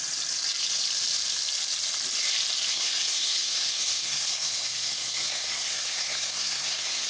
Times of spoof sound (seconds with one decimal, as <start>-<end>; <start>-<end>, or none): 2.7-7.1